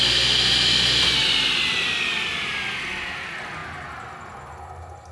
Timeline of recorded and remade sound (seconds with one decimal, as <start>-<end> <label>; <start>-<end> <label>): 0.0-5.1 recorded